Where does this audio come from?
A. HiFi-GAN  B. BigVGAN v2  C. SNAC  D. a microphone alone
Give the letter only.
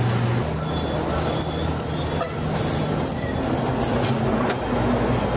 D